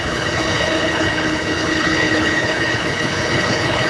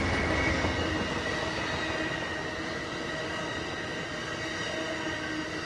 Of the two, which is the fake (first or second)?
first